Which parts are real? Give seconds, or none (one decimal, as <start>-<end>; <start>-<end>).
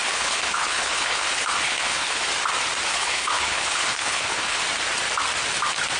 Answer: 2.2-2.9; 4.6-6.0